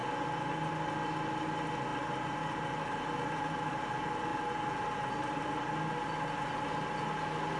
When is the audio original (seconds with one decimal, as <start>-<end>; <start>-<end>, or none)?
0.0-7.6